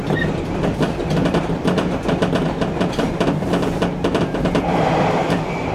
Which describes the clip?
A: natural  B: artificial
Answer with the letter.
A